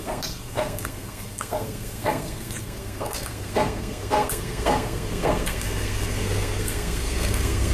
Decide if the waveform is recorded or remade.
remade